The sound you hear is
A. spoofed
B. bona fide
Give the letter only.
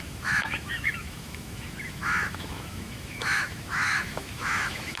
A